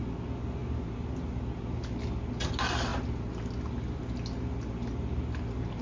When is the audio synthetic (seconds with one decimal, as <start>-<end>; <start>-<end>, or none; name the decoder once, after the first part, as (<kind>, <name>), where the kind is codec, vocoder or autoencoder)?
none